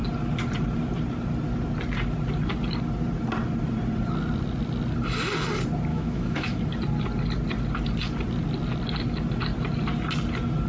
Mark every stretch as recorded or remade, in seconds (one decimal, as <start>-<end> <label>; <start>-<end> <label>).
0.0-5.9 recorded; 5.9-6.6 remade; 6.6-10.7 recorded

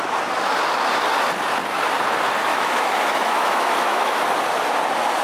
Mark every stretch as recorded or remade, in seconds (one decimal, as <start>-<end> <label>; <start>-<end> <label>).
0.0-2.5 recorded; 2.5-4.2 remade; 4.2-5.2 recorded